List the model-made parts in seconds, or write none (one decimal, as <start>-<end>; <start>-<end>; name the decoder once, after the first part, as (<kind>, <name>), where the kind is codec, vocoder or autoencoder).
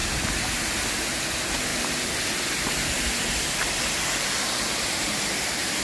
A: 0.0-0.9 (vocoder, BigVGAN v2); 1.7-5.2